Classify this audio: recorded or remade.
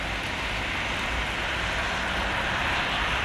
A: recorded